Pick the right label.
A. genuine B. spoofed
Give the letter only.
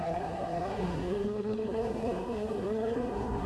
B